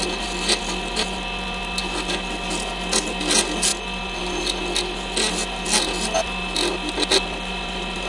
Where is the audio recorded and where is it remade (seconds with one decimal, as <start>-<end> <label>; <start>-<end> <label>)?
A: 0.0-8.1 recorded